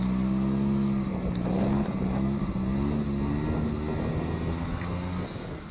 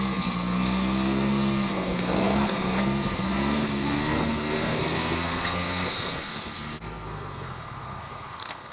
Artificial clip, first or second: second